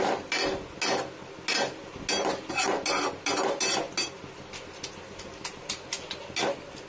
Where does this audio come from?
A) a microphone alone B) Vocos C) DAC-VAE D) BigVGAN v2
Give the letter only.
A